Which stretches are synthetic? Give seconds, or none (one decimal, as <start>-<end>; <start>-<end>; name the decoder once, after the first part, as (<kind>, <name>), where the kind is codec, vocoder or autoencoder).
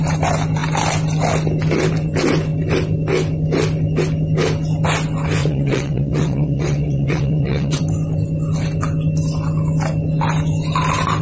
5.4-7.8 (vocoder, WaveNeXt)